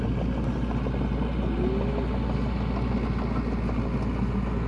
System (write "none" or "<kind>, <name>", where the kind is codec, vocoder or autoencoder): none